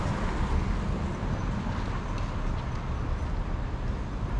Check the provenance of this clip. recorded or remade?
recorded